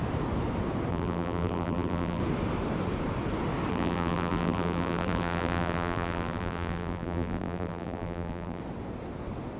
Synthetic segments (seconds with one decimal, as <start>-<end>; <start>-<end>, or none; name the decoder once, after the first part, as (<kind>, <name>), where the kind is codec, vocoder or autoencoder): 0.9-2.2 (vocoder, BigVGAN v2); 3.7-8.6

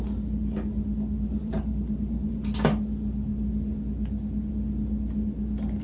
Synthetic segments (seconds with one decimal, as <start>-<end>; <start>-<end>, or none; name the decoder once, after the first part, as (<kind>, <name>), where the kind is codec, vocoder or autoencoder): 1.4-2.4 (vocoder, BigVGAN v2)

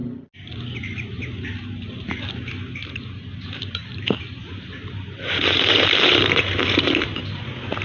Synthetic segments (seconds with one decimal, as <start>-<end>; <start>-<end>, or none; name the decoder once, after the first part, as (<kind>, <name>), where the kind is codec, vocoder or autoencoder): 2.8-7.8 (vocoder, BigVGAN v2)